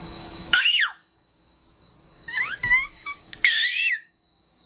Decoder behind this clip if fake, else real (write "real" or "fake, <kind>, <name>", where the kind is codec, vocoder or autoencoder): fake, codec, DAC